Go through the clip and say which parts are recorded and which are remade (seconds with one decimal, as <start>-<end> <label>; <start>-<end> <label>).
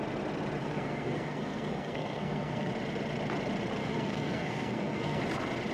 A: 0.0-0.6 recorded; 0.6-2.7 remade; 2.7-3.8 recorded; 3.8-5.2 remade; 5.2-5.7 recorded